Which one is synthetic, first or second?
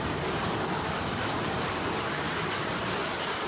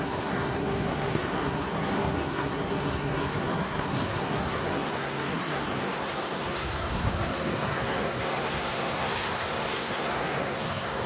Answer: second